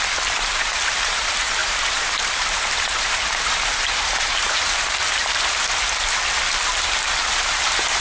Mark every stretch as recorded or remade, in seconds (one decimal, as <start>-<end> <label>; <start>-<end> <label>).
0.0-5.0 remade; 5.0-7.5 recorded; 7.5-8.0 remade